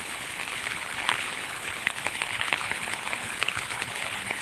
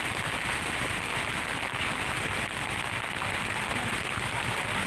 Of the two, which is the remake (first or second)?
first